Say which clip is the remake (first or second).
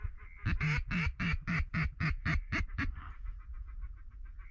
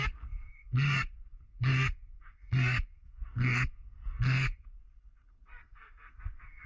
second